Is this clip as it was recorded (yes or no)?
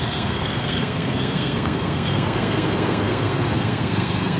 no